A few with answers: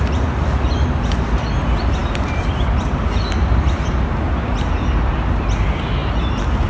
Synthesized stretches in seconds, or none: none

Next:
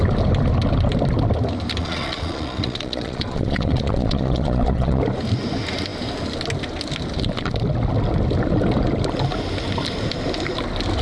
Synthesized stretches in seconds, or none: 1.8-5.0